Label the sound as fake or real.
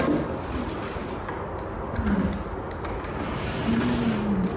real